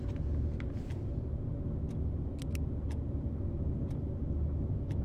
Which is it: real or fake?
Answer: real